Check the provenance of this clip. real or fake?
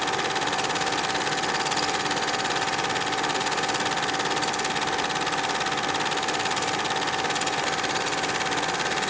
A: real